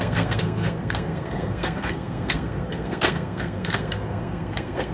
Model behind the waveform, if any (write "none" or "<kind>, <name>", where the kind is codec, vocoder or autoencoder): codec, SNAC